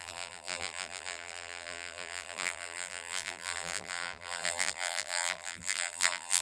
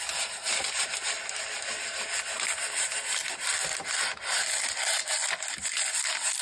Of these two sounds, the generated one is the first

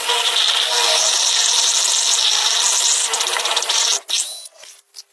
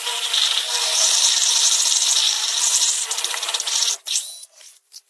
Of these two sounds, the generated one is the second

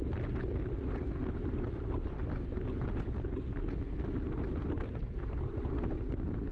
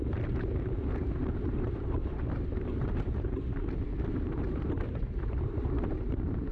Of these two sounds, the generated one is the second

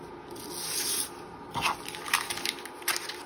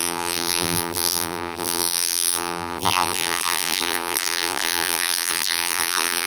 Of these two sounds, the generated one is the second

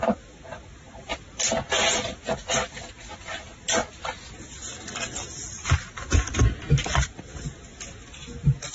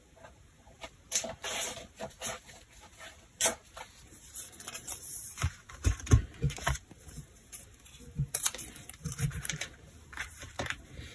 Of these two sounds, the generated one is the second